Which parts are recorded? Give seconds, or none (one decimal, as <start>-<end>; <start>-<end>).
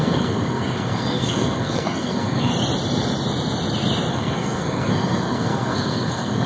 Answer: 2.5-4.1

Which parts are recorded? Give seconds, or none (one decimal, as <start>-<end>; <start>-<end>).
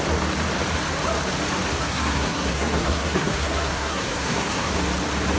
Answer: 0.0-1.8; 4.7-5.4